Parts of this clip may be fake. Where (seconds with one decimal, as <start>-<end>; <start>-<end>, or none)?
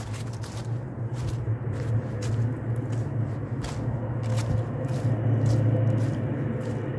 0.6-2.2